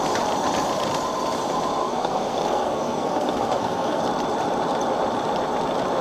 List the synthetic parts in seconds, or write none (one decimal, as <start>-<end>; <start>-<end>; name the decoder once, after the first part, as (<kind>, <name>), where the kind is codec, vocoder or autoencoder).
1.8-4.0 (codec, SNAC)

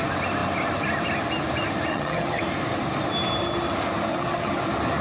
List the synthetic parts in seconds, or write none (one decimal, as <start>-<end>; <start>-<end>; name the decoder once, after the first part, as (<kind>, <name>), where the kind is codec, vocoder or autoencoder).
1.9-2.4 (vocoder, HiFi-GAN); 4.1-4.6

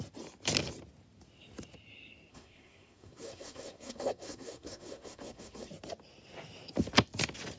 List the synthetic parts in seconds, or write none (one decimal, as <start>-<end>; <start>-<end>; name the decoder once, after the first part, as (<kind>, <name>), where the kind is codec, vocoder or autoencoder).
2.3-5.7 (codec, SNAC)

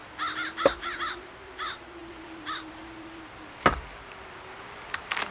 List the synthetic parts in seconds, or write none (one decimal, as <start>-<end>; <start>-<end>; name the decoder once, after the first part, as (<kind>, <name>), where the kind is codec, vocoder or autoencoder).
0.8-5.3 (vocoder, BigVGAN v2)

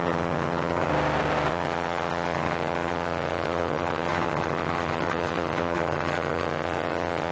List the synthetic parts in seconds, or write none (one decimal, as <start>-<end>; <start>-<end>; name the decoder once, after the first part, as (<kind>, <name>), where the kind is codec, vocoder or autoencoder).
0.0-0.9 (vocoder, HiFi-GAN); 1.5-7.3